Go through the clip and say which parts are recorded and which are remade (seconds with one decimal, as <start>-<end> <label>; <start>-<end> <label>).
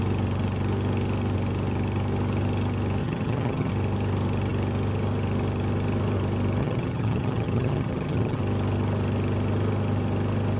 0.0-3.0 recorded; 3.0-3.7 remade; 3.7-6.6 recorded; 6.6-8.4 remade; 8.4-10.6 recorded